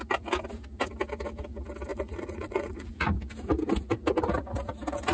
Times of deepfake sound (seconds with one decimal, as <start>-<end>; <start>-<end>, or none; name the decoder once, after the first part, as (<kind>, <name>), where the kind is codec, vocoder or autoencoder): 1.9-3.0 (vocoder, Vocos)